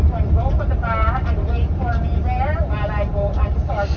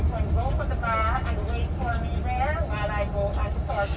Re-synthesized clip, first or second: first